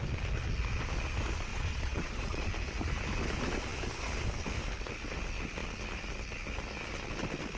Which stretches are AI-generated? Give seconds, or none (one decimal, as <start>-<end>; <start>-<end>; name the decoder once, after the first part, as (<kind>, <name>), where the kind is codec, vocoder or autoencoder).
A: 1.5-2.5 (vocoder, Vocos)